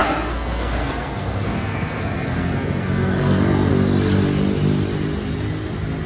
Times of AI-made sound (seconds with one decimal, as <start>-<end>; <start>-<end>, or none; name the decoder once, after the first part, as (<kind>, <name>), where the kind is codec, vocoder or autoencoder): 0.0-3.7 (codec, SNAC)